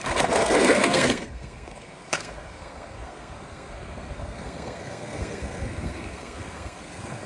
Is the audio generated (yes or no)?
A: yes